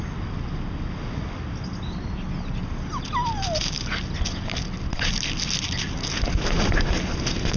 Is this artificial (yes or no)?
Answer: no